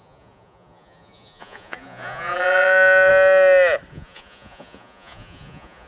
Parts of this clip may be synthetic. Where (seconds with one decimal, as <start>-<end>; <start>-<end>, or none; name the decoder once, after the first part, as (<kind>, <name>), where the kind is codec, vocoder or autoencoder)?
0.0-3.1 (vocoder, Vocos); 3.9-5.9